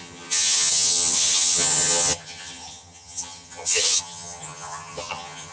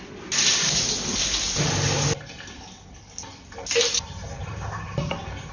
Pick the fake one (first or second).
first